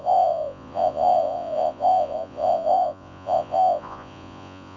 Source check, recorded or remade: remade